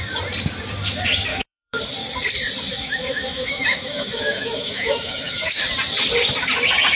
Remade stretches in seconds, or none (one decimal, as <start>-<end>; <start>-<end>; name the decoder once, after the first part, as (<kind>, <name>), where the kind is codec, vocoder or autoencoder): 1.3-1.8 (autoencoder, DAC-VAE); 2.7-5.6